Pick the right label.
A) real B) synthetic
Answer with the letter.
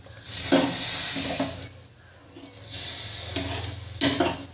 A